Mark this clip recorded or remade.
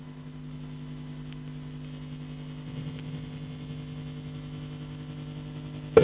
recorded